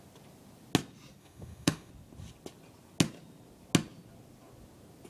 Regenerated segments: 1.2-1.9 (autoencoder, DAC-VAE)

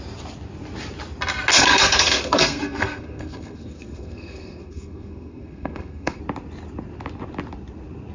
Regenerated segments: 1.5-6.2 (codec, SNAC)

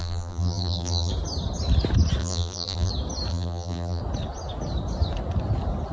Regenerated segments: 0.0-1.1 (vocoder, BigVGAN v2); 2.2-2.9; 3.3-4.0

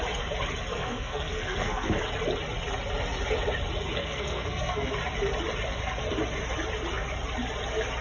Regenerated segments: 0.7-2.0 (codec, SNAC); 4.0-4.9

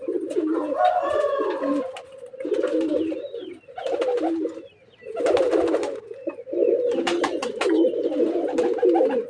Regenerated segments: 6.6-9.3 (vocoder, BigVGAN v2)

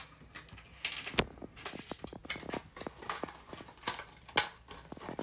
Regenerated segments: none